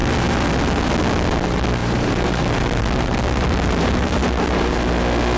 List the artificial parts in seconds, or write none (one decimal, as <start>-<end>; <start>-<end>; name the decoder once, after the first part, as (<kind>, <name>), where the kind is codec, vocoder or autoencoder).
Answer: 1.8-4.9 (vocoder, BigVGAN v2)